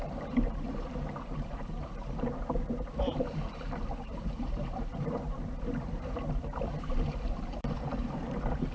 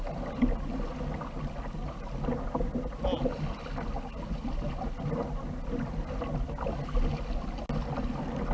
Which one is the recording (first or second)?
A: second